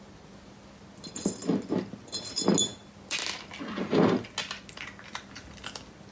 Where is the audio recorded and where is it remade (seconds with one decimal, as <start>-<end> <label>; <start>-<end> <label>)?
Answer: 0.0-6.1 recorded